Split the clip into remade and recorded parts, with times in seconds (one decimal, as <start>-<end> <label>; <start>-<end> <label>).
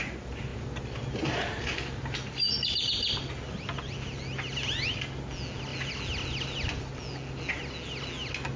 0.0-8.6 recorded